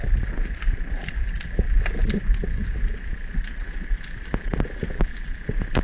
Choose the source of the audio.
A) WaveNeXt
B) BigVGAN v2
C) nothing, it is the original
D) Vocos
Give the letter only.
C